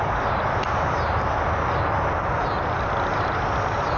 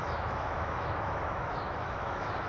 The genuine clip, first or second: first